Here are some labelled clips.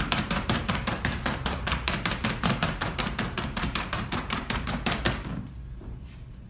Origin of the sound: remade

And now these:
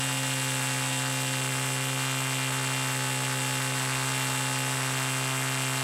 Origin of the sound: recorded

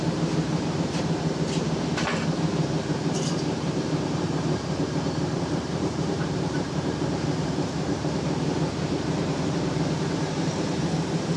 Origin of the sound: remade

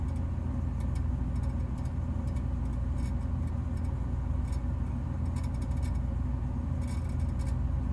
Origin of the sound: recorded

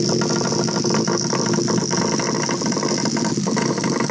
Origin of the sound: recorded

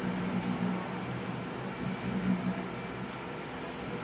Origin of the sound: recorded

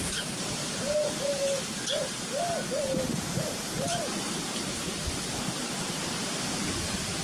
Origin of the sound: remade